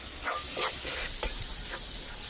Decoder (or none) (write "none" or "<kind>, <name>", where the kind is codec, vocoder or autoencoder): none